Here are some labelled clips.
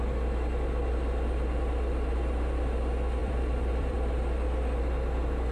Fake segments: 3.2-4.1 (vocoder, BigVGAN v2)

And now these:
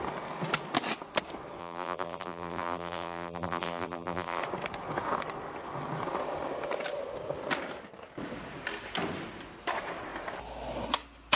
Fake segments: 1.6-4.4 (vocoder, BigVGAN v2)

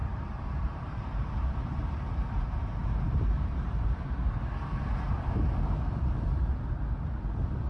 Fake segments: 0.0-4.2 (vocoder, BigVGAN v2)

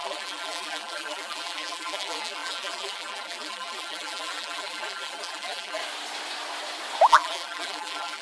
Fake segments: 0.0-5.8 (vocoder, BigVGAN v2); 7.1-8.2

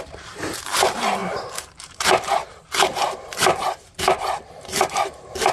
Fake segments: 0.0-5.5 (vocoder, BigVGAN v2)

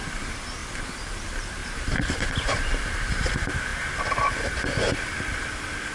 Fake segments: 1.6-3.3 (vocoder, BigVGAN v2)